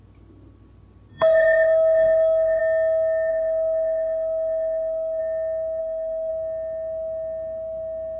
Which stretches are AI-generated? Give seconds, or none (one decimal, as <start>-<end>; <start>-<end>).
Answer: 1.1-2.6; 3.3-5.2; 5.8-6.3